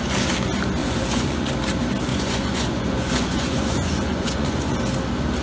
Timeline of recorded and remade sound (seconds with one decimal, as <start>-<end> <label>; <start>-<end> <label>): 0.0-0.8 recorded; 0.8-1.5 remade; 1.5-2.1 recorded; 2.1-4.8 remade; 4.8-5.4 recorded